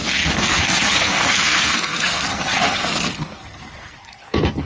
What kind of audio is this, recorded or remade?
remade